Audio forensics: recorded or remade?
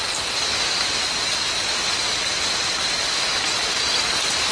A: recorded